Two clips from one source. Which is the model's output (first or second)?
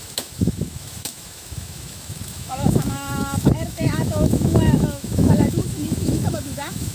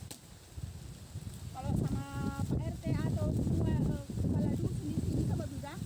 first